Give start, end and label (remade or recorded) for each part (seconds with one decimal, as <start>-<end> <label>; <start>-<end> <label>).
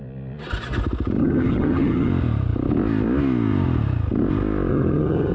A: 0.0-1.2 recorded; 1.2-2.1 remade; 2.1-4.7 recorded; 4.7-5.3 remade